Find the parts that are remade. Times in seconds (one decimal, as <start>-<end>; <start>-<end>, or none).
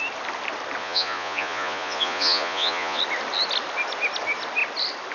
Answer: 0.8-3.0